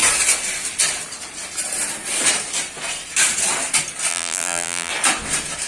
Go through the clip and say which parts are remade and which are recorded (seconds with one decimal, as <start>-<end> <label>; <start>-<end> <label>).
0.0-4.1 recorded; 4.1-4.9 remade; 4.9-5.7 recorded